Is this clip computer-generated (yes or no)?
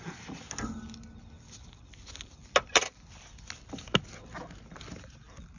no